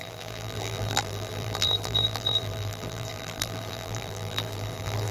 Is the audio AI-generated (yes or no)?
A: yes